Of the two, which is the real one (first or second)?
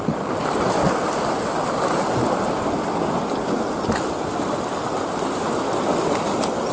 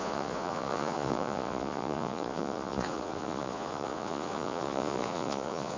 first